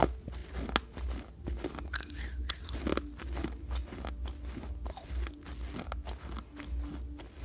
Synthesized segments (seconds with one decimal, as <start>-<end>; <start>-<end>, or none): none